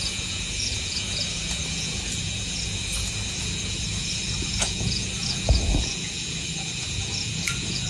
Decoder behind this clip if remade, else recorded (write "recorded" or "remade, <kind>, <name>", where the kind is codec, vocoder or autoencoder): remade, vocoder, Vocos